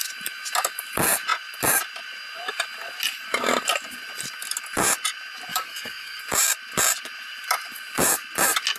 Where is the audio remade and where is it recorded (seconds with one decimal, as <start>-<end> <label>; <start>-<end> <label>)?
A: 0.0-5.5 recorded; 5.5-6.2 remade; 6.2-8.8 recorded